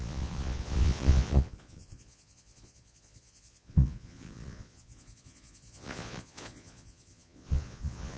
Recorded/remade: remade